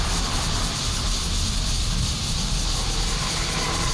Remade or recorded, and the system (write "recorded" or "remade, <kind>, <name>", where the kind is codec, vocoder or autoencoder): remade, vocoder, BigVGAN v2